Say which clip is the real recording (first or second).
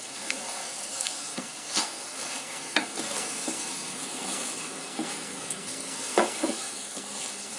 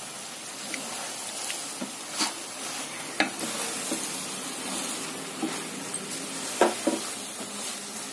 second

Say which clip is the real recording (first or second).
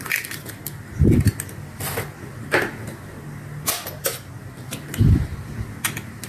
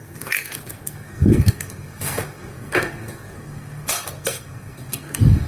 first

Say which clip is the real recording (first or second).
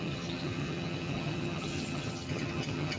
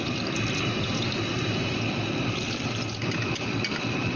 second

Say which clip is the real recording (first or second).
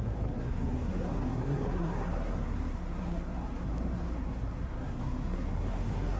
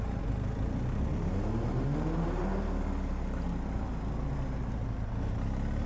second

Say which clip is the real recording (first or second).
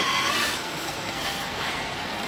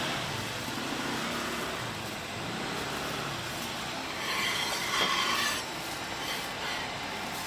second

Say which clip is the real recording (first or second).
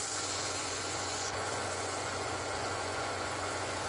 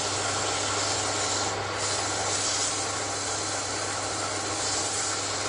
second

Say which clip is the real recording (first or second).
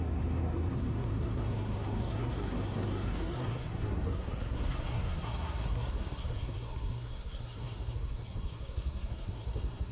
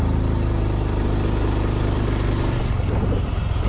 second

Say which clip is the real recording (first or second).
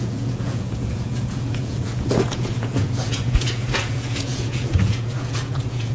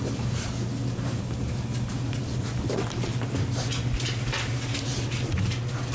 second